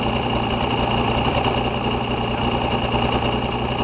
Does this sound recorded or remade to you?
recorded